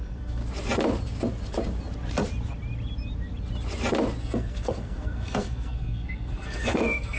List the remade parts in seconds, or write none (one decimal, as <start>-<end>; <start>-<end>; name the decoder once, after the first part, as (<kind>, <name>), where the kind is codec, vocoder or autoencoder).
0.0-0.4 (codec, SNAC); 4.2-7.2